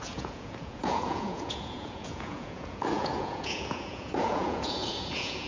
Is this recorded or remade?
remade